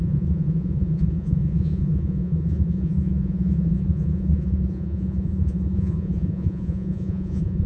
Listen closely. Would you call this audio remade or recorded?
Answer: remade